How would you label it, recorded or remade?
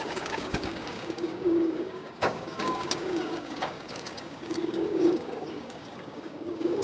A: remade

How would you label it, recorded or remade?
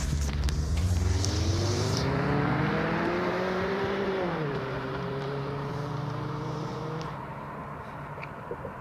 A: remade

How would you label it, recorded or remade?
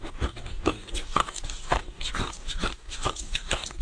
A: remade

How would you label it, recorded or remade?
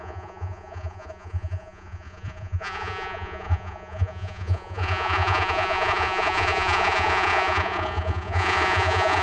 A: remade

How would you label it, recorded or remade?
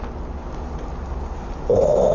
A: recorded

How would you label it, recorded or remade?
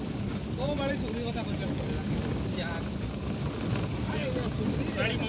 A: recorded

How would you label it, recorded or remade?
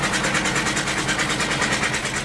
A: recorded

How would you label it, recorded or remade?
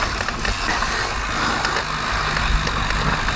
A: recorded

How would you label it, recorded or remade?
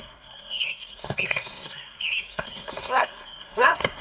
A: remade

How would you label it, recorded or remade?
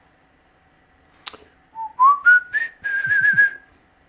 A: recorded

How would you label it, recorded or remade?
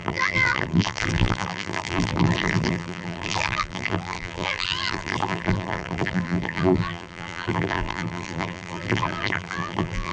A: remade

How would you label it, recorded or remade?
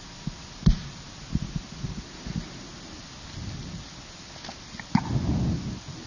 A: recorded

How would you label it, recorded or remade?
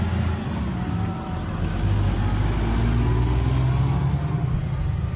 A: recorded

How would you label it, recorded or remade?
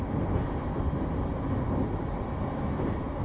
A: recorded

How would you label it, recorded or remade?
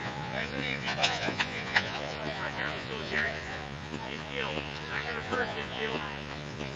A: remade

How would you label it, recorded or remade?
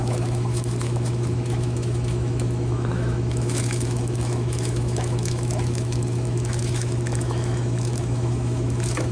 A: remade